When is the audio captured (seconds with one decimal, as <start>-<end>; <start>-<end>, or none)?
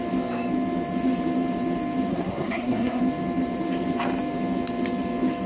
0.0-2.1; 3.0-5.5